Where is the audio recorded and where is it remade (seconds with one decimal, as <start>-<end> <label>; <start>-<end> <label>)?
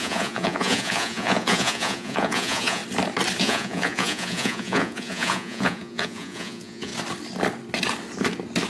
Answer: 0.0-2.8 remade; 2.8-3.4 recorded; 3.4-6.9 remade; 6.9-8.7 recorded